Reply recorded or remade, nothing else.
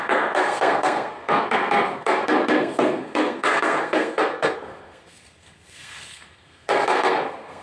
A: remade